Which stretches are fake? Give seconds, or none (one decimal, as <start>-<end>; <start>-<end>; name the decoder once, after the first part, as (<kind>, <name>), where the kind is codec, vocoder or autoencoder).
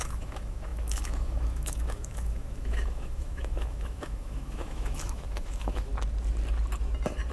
0.0-5.9 (autoencoder, DAC-VAE)